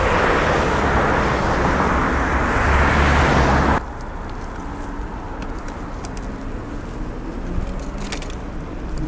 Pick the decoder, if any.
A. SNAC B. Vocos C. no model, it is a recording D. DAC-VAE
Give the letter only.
C